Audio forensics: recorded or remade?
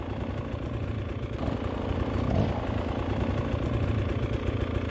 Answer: recorded